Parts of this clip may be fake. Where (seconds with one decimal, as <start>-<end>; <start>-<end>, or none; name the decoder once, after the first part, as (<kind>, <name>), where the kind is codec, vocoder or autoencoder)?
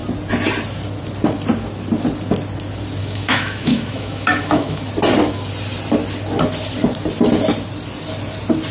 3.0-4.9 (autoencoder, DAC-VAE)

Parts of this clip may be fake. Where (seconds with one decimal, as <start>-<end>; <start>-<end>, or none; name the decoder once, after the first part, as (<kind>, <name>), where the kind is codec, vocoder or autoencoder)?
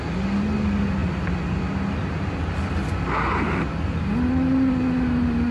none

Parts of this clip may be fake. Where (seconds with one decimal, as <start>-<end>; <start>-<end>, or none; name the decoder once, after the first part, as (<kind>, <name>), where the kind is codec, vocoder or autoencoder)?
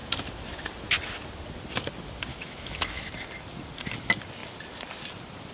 2.3-3.1 (autoencoder, DAC-VAE)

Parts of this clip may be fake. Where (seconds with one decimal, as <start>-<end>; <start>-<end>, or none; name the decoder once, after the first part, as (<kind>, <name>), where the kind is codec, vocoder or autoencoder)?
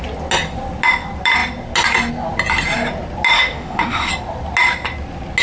3.3-4.1 (autoencoder, DAC-VAE)